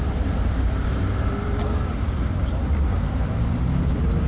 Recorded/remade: remade